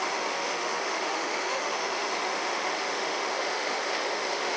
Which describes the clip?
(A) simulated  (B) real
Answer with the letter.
A